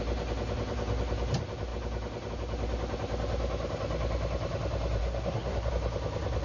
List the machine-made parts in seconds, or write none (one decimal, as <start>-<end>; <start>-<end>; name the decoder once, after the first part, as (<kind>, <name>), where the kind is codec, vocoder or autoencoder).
5.0-5.7 (codec, SNAC)